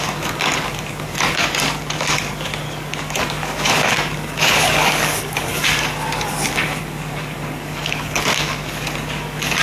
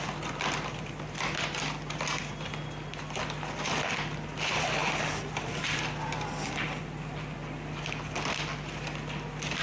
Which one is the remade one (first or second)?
first